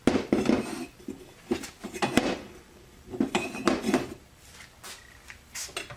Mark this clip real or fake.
real